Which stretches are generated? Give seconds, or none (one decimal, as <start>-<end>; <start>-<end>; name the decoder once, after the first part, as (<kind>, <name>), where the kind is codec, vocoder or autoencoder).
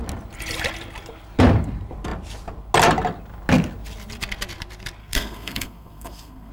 5.0-6.5 (codec, SNAC)